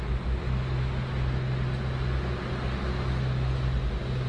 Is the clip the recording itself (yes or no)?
yes